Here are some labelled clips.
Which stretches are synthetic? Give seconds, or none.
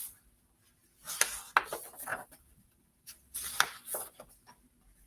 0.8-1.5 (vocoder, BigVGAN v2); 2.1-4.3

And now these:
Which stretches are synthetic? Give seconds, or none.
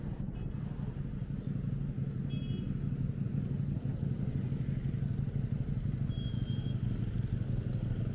none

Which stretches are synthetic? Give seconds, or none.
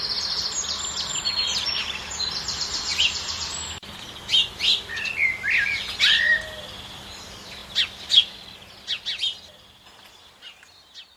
2.9-3.4 (vocoder, BigVGAN v2)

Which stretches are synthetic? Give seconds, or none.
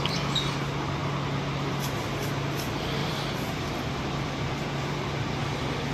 3.0-4.5 (vocoder, BigVGAN v2)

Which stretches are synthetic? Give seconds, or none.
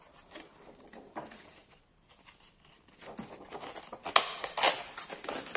none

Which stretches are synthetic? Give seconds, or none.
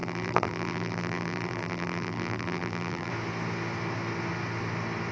0.0-3.1 (vocoder, BigVGAN v2)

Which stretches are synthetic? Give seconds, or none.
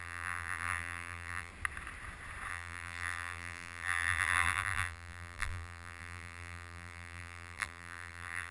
0.0-1.5 (vocoder, BigVGAN v2); 2.5-8.5